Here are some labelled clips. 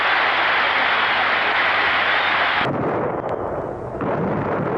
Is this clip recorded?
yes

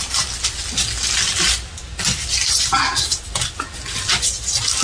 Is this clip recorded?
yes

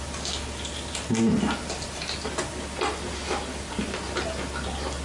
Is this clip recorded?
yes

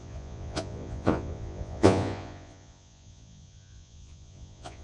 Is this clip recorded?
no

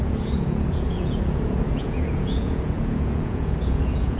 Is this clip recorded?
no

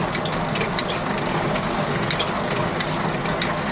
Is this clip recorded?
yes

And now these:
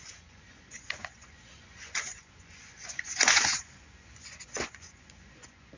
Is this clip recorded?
no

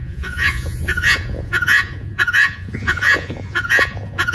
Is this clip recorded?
no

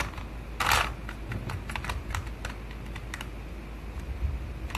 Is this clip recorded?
yes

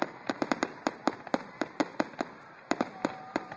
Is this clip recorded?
yes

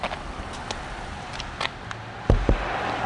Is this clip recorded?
yes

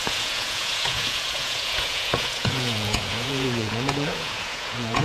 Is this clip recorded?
no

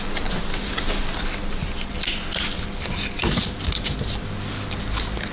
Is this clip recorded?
yes